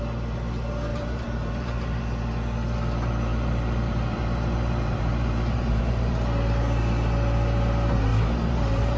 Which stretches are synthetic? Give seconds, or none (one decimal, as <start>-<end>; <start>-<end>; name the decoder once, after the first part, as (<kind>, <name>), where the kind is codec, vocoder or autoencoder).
0.9-2.0 (vocoder, BigVGAN v2); 3.3-6.1; 8.1-9.0